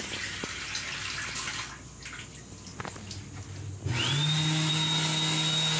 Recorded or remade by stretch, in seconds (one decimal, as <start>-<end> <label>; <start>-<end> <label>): 0.0-5.8 recorded